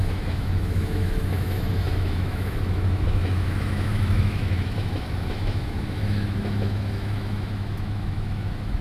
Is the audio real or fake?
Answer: fake